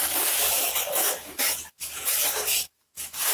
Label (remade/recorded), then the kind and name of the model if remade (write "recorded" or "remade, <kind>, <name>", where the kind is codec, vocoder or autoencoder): remade, codec, DAC